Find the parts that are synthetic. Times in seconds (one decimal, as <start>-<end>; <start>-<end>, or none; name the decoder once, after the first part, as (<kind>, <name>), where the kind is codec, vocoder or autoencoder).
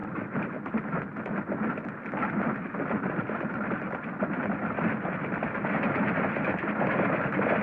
none